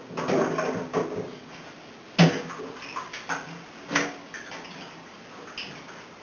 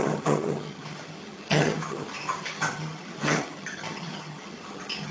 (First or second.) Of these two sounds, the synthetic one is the second